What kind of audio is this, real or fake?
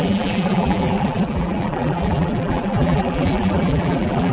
fake